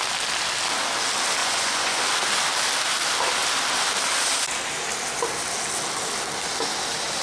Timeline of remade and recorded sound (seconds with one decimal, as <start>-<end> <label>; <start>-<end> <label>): 0.0-1.4 recorded; 1.4-2.0 remade; 2.0-7.2 recorded